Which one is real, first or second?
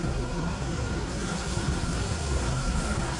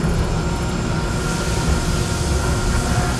second